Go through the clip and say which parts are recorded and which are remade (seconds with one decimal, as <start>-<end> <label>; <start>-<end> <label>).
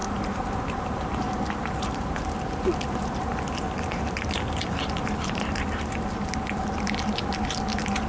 0.0-8.1 remade